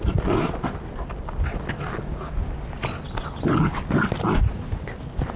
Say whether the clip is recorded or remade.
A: recorded